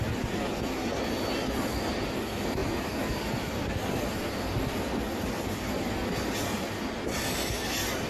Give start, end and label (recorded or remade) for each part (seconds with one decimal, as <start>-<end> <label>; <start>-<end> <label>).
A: 0.0-8.1 recorded